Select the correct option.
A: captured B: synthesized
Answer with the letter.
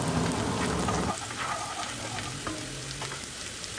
A